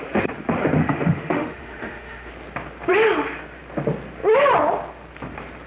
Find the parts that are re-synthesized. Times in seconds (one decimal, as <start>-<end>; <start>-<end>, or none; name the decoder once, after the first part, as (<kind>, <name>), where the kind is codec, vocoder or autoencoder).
0.8-2.3 (autoencoder, DAC-VAE)